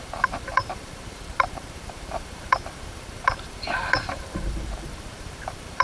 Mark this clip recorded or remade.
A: remade